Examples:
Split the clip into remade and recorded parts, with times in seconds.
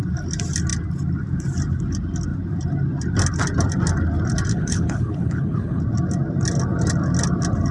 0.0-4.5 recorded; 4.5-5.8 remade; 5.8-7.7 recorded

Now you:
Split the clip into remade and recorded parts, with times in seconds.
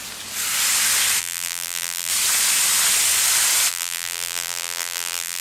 0.0-1.2 recorded; 1.2-2.1 remade; 2.1-3.7 recorded; 3.7-5.4 remade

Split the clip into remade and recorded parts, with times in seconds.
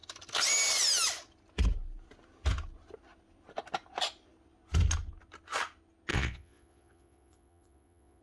0.0-6.1 recorded; 6.1-8.2 remade